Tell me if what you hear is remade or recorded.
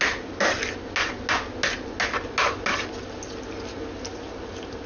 recorded